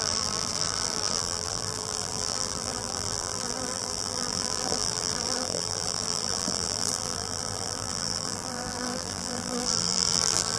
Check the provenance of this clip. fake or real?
fake